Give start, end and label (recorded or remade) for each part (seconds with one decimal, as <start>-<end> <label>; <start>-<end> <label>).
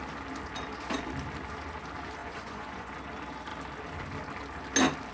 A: 0.0-2.2 recorded; 2.2-2.9 remade; 2.9-5.1 recorded